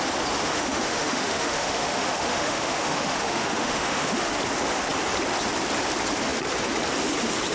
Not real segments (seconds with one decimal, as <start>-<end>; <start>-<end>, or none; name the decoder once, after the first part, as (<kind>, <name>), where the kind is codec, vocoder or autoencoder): 0.4-4.3 (autoencoder, DAC-VAE)